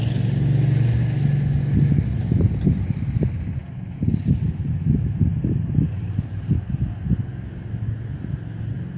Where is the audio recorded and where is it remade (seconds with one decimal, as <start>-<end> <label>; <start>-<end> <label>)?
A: 0.0-9.0 recorded